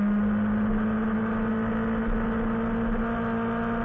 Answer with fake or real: real